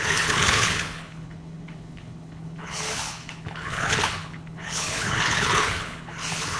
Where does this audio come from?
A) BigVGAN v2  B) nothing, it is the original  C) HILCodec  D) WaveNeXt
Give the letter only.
C